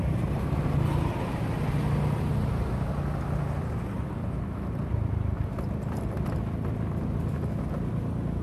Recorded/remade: recorded